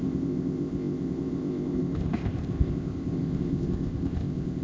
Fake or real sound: fake